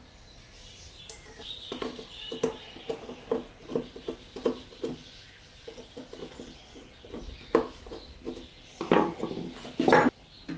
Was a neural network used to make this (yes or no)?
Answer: no